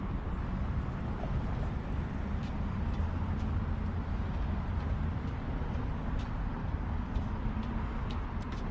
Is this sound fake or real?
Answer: real